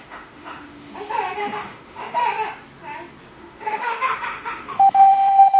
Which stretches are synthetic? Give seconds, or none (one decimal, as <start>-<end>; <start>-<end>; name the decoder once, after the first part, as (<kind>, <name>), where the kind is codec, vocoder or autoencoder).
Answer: 0.0-0.9 (autoencoder, DAC-VAE); 1.4-2.2; 3.3-5.6

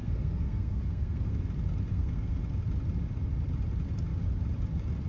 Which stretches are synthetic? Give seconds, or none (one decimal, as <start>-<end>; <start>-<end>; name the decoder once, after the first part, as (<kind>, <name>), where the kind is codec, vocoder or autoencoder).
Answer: 0.0-1.4 (codec, SNAC); 1.9-2.4

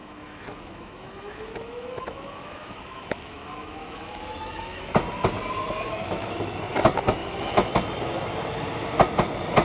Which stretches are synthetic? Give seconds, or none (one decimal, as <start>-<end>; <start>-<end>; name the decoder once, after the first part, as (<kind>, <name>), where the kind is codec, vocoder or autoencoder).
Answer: 0.0-4.8 (autoencoder, DAC-VAE); 5.9-6.6; 7.2-7.7

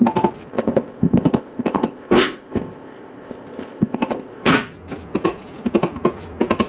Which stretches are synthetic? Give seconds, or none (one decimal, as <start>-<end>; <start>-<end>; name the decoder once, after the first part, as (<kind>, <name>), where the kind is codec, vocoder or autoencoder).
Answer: 0.5-4.5 (codec, ZipCodec)